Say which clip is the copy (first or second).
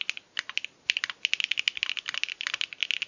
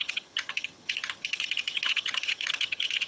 second